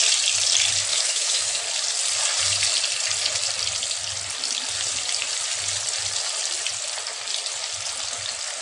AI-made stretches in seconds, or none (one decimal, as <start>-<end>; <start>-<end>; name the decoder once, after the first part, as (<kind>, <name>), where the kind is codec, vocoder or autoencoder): 0.9-1.6 (autoencoder, DAC-VAE)

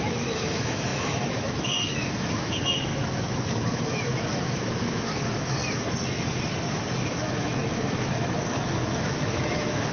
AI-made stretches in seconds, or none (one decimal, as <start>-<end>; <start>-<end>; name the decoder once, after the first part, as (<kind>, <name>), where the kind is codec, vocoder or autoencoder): 0.0-5.6 (autoencoder, DAC-VAE); 7.1-9.9

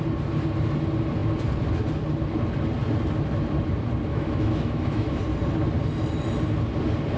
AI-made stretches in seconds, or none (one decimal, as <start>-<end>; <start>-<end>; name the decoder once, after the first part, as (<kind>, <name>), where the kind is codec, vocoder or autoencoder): 4.1-5.2 (autoencoder, DAC-VAE)

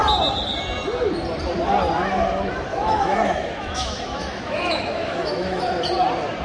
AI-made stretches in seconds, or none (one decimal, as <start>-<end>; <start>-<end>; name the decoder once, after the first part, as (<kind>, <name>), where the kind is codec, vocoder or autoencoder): 2.7-5.6 (autoencoder, DAC-VAE)

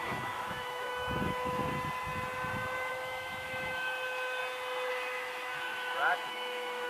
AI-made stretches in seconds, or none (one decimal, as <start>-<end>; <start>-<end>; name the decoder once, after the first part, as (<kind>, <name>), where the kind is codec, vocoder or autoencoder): 0.0-1.6 (autoencoder, DAC-VAE); 2.9-4.4; 4.9-5.7; 6.3-6.9

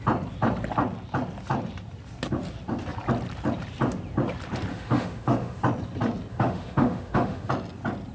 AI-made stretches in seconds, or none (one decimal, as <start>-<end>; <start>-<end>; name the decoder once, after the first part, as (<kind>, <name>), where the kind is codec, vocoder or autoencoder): 4.7-5.6 (autoencoder, DAC-VAE); 6.3-7.5